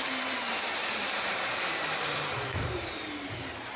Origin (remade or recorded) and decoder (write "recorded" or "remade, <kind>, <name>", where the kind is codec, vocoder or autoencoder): remade, vocoder, BigVGAN v2